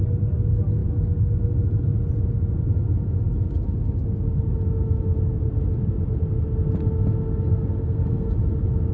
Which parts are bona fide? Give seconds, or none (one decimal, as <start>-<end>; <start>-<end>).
0.0-7.5; 8.3-8.9